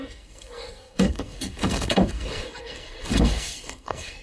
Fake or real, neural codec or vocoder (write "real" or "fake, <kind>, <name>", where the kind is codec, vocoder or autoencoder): fake, codec, SNAC